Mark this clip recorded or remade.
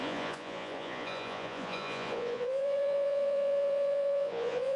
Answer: remade